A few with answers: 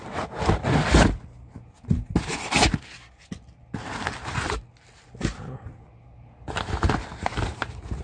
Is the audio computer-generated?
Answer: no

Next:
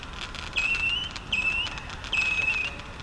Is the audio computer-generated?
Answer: no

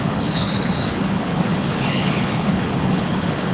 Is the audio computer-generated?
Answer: yes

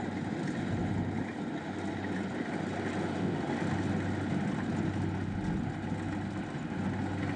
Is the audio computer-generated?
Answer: no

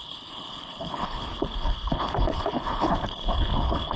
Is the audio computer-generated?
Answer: yes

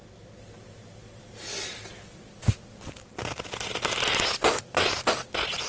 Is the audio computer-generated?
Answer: no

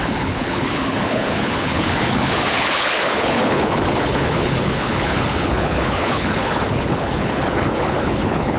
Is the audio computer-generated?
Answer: yes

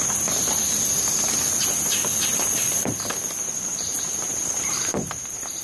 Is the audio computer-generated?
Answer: no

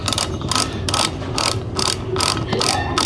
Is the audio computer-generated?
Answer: no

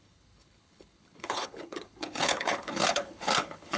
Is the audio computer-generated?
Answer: yes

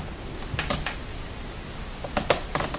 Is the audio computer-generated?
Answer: no